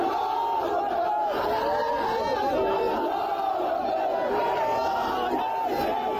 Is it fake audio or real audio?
real